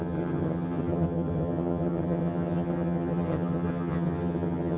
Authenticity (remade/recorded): remade